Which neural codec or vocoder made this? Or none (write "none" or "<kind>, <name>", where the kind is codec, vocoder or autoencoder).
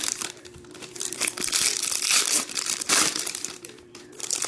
vocoder, BigVGAN v2